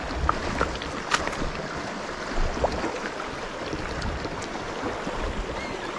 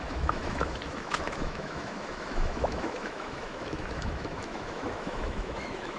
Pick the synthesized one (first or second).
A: second